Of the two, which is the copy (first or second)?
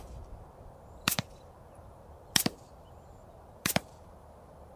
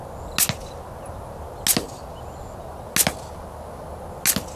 first